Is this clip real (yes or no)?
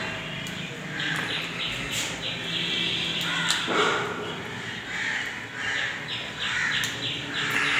yes